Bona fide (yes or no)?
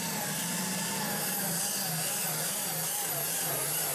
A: yes